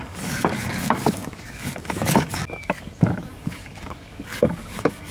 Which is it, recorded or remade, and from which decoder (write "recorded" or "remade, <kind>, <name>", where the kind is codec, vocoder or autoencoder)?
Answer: remade, codec, DAC